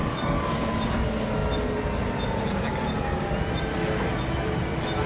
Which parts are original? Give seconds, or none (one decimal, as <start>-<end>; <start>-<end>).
0.7-5.1